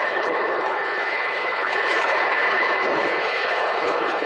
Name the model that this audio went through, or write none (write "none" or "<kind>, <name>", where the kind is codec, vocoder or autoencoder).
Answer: codec, HILCodec